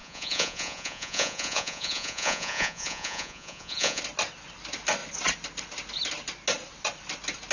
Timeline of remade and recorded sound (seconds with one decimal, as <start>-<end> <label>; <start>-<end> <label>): 0.0-4.0 remade; 4.0-7.5 recorded